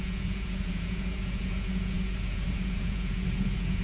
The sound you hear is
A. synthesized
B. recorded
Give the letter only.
A